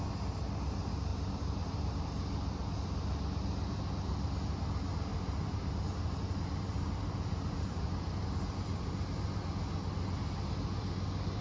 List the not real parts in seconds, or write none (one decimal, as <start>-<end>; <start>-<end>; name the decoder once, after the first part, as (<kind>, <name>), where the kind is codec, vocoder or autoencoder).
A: 1.1-2.1 (vocoder, BigVGAN v2); 5.1-9.2